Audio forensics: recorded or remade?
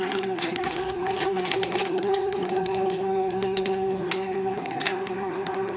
remade